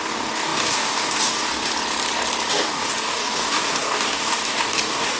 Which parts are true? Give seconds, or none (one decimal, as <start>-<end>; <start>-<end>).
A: 1.7-2.5